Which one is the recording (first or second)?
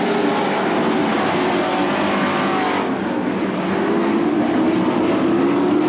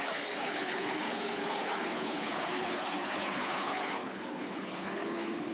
first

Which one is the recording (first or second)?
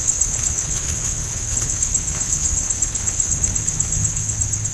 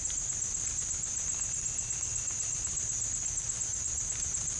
second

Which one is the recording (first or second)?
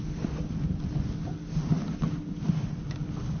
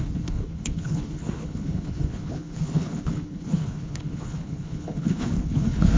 first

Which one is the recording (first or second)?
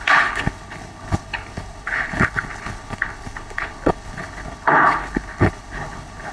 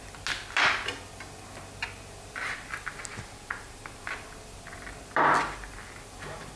second